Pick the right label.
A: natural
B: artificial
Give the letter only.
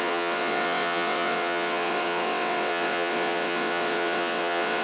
B